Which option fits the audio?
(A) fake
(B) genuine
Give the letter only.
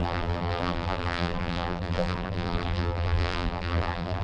A